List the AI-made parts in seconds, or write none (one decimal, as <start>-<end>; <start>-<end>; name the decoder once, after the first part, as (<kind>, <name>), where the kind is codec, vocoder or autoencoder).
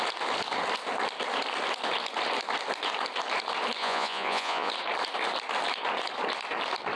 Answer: 3.8-4.7 (vocoder, Vocos)